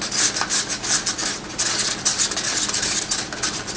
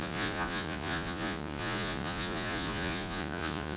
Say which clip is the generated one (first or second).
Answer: second